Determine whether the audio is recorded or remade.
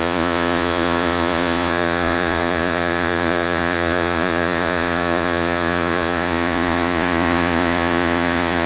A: remade